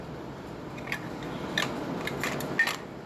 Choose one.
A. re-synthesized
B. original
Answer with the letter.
B